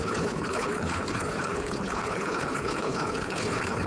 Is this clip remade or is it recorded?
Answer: remade